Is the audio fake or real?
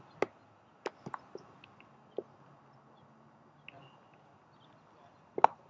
real